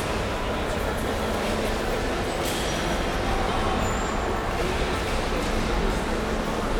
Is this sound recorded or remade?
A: recorded